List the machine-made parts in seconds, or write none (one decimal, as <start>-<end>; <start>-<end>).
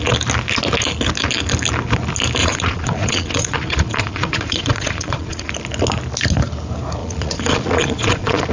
2.4-5.5; 7.0-8.5